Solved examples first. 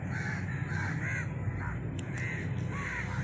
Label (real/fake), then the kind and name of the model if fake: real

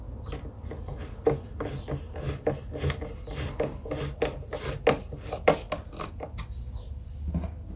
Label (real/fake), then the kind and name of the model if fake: real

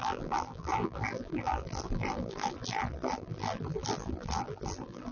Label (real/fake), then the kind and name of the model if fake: fake, vocoder, BigVGAN v2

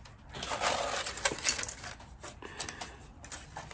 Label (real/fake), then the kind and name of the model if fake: real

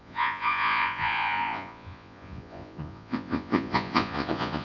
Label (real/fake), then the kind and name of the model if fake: fake, vocoder, Vocos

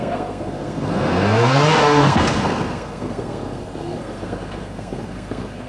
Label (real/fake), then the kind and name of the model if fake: fake, codec, SNAC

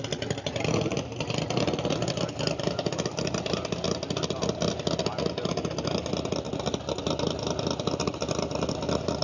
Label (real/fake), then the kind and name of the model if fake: real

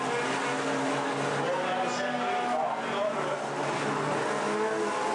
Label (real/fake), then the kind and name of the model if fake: real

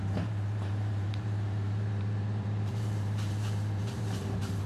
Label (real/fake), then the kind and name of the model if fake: fake, vocoder, BigVGAN v2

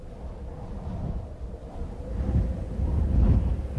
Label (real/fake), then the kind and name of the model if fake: real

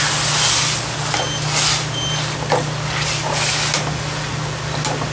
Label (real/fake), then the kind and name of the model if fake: real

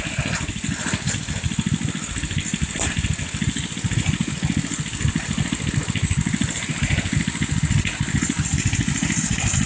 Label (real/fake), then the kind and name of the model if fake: real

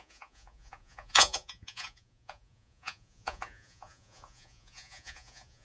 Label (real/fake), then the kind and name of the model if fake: fake, vocoder, Vocos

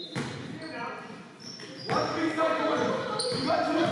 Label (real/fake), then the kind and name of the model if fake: real